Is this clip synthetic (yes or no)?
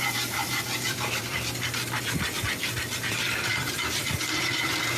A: yes